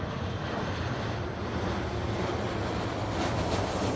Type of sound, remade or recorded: recorded